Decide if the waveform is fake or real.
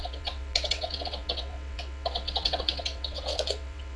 fake